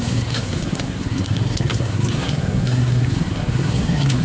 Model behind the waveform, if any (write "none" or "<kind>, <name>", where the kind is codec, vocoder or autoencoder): codec, SNAC